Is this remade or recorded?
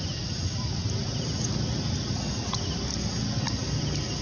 recorded